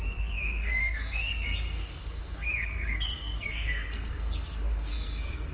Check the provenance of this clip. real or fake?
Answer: fake